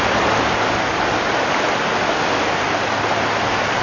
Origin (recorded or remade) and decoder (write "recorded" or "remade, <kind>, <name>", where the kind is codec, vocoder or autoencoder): recorded